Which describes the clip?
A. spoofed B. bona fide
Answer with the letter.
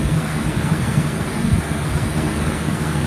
A